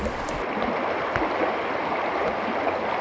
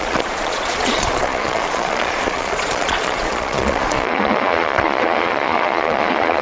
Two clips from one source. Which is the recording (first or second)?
first